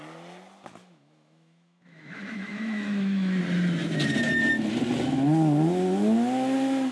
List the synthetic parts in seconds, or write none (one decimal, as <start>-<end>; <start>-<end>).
0.8-3.4